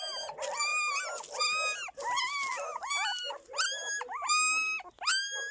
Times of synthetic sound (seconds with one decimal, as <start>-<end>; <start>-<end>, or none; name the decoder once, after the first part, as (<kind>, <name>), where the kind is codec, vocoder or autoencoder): none